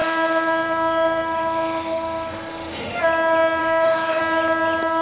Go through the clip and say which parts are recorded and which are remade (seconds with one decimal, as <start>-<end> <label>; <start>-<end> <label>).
0.0-3.0 remade; 3.0-3.6 recorded; 3.6-4.2 remade; 4.2-5.0 recorded

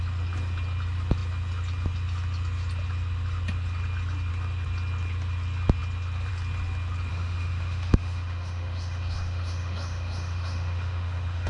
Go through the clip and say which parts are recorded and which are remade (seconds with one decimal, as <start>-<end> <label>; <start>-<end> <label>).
0.0-7.1 recorded; 7.1-11.5 remade

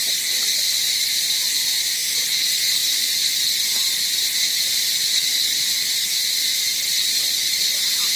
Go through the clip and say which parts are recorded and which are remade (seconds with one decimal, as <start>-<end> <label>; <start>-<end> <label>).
0.0-8.2 recorded

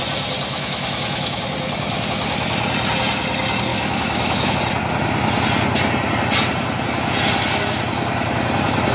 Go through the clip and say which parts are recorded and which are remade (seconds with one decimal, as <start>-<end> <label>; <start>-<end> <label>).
0.0-0.5 recorded; 0.5-1.4 remade; 1.4-3.7 recorded; 3.7-4.5 remade; 4.5-8.9 recorded